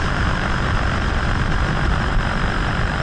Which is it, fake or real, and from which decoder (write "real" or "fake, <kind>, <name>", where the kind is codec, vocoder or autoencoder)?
real